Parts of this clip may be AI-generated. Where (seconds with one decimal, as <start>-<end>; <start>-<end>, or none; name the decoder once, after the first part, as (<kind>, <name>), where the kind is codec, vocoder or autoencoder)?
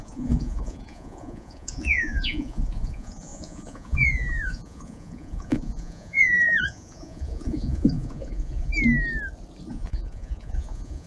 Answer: 0.0-8.7 (vocoder, Vocos); 9.7-11.1